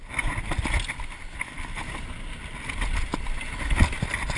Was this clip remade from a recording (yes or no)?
no